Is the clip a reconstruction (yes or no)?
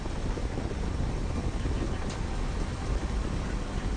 no